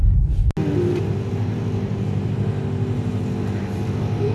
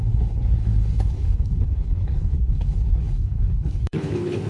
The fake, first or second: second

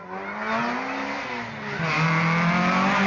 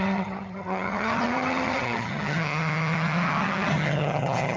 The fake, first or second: second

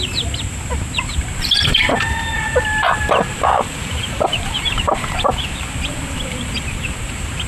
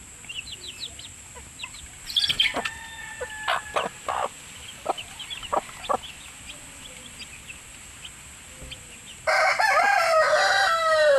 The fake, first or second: first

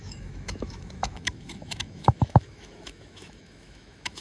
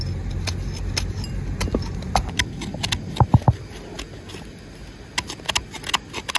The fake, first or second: first